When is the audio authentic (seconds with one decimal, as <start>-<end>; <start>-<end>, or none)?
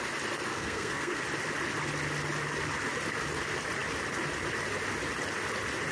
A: 0.0-0.5; 1.2-5.9